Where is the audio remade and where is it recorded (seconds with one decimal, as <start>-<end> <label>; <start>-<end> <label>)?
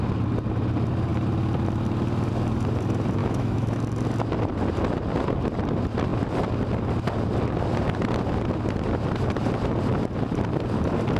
0.0-3.2 recorded; 3.2-3.8 remade; 3.8-11.2 recorded